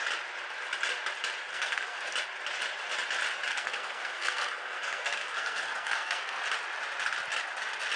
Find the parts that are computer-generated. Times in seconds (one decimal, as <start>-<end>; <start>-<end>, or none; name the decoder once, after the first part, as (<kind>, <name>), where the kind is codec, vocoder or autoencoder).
1.5-2.1 (codec, SNAC); 3.5-6.4